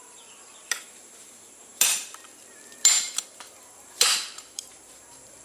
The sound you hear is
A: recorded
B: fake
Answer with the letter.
B